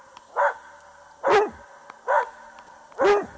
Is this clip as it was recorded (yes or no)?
yes